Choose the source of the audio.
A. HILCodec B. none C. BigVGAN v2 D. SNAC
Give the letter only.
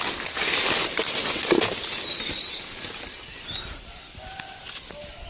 B